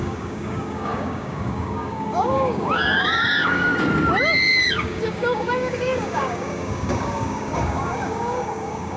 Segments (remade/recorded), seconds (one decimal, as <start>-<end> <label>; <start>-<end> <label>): 0.0-3.7 remade; 3.7-4.6 recorded; 4.6-9.0 remade